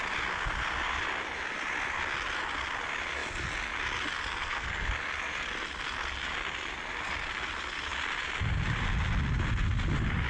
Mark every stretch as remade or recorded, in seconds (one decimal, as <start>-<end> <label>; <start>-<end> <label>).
0.0-4.3 recorded; 4.3-4.9 remade; 4.9-10.3 recorded